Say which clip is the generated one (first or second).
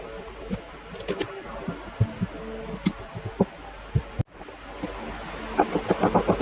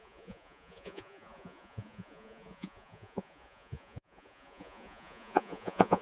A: second